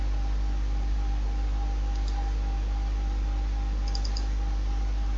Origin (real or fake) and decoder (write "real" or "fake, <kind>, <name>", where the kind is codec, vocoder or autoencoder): real